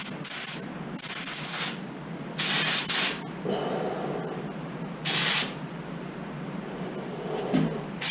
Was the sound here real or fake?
real